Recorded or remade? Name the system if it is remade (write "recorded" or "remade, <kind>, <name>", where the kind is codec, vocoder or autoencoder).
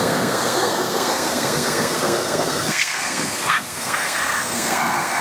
remade, codec, SNAC